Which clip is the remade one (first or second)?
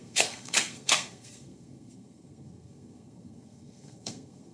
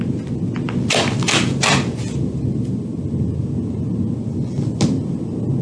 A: first